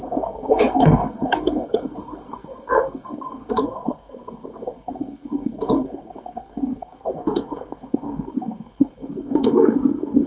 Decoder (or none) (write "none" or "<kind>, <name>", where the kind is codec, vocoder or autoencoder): codec, SNAC